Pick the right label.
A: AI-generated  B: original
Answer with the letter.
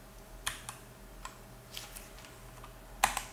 B